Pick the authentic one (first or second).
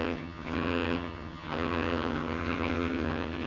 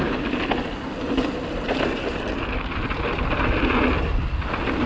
second